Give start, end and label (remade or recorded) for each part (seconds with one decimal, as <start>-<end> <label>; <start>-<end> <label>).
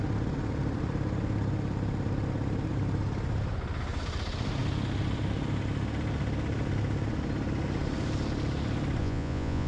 0.0-9.0 recorded; 9.0-9.7 remade